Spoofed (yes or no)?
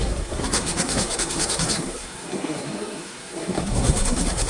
yes